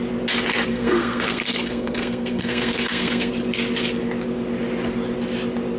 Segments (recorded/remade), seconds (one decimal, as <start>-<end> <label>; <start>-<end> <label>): 0.0-0.7 recorded; 0.7-3.3 remade; 3.3-5.8 recorded